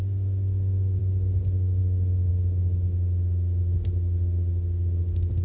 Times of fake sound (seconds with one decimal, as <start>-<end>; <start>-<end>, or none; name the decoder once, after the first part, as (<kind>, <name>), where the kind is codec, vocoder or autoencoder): none